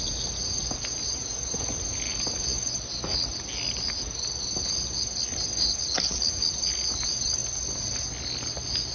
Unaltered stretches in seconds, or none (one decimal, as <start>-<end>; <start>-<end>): 0.0-8.9